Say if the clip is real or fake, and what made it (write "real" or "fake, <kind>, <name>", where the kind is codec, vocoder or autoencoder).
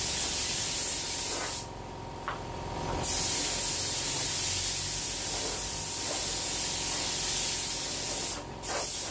real